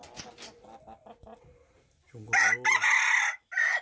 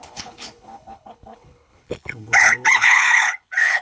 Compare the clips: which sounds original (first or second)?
first